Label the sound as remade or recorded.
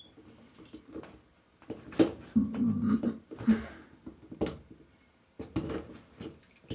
recorded